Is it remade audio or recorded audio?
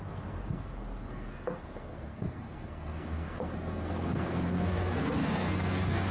remade